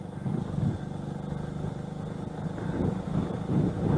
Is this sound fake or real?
real